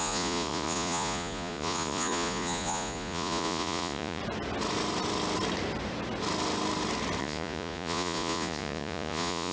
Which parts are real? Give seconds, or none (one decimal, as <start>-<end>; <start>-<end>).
4.2-7.2